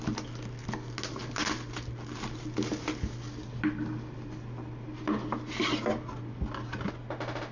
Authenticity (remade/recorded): recorded